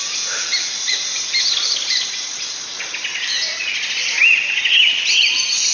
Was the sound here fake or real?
real